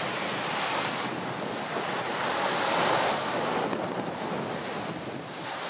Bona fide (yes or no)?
yes